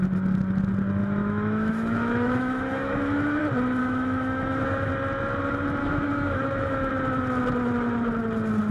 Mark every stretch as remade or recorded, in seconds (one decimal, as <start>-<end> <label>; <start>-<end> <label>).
0.0-1.0 recorded; 1.0-3.4 remade; 3.4-3.8 recorded; 3.8-4.9 remade; 4.9-5.8 recorded; 5.8-6.9 remade; 6.9-8.7 recorded

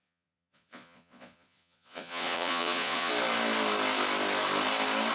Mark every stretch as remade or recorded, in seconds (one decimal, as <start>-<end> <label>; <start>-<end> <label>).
0.0-3.1 remade; 3.1-5.1 recorded